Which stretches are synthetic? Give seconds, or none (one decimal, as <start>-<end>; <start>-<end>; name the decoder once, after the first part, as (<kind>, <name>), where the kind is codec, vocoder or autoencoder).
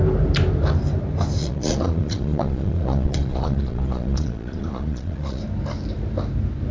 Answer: 1.4-5.4 (vocoder, Vocos)